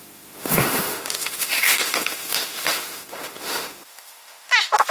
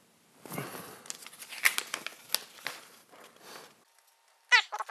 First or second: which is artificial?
first